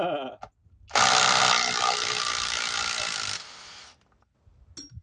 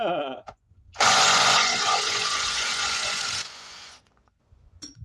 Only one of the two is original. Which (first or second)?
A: first